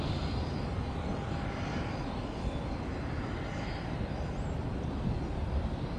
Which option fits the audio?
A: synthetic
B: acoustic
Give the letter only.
B